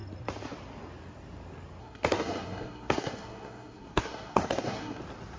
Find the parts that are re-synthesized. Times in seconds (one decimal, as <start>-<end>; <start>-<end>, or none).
1.8-5.0